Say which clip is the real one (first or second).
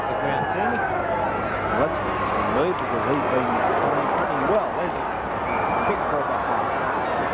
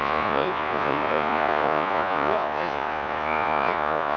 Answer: first